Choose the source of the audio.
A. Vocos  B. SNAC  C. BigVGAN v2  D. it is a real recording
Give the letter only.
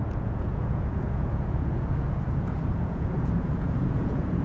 A